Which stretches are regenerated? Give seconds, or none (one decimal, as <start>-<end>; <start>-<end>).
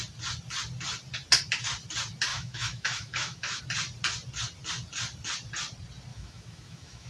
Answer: 2.3-3.6; 6.1-7.1